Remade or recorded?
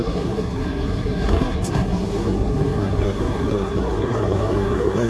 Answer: remade